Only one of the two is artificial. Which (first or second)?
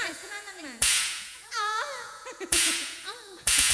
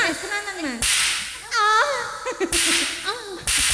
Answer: first